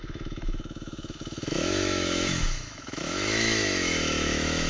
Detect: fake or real fake